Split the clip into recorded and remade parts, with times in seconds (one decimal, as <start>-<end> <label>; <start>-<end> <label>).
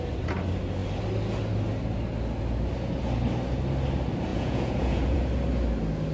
0.0-4.3 recorded; 4.3-5.2 remade; 5.2-6.1 recorded